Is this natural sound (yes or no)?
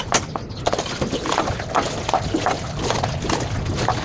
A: yes